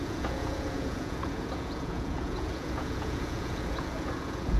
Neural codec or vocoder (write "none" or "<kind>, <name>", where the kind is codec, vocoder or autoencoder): vocoder, Vocos